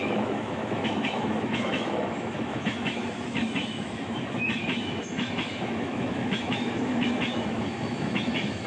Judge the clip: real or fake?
fake